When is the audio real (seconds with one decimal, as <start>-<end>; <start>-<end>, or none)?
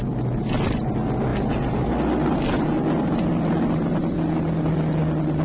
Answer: 0.0-5.4